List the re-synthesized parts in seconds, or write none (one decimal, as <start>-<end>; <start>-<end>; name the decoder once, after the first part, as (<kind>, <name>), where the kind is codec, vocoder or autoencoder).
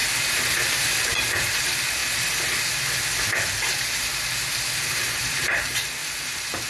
1.0-2.0 (vocoder, BigVGAN v2); 4.9-6.0